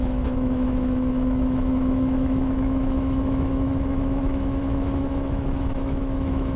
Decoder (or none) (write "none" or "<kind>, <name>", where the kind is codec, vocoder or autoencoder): autoencoder, DAC-VAE